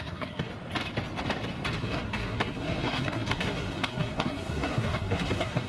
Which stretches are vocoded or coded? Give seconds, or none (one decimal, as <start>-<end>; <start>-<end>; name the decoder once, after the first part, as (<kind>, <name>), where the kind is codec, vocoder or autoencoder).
0.0-0.5 (codec, SNAC); 1.8-5.7